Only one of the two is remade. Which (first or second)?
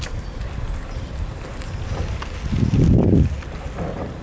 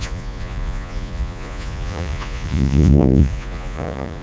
second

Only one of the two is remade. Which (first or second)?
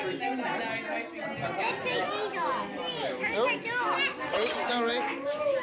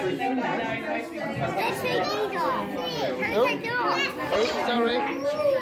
second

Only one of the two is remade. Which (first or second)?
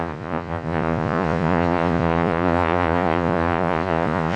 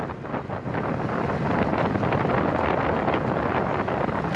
first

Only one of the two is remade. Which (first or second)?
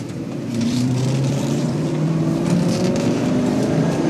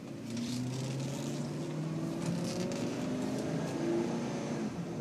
first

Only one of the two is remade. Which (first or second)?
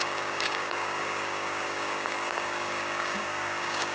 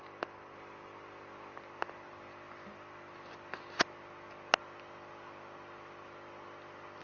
first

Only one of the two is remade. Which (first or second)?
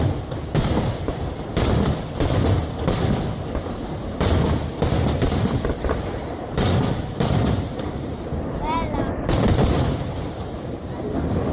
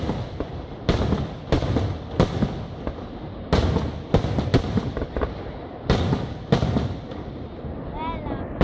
first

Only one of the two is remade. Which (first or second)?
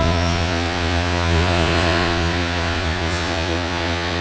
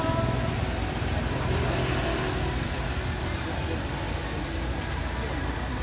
first